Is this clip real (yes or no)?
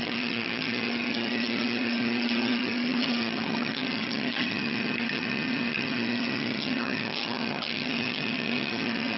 no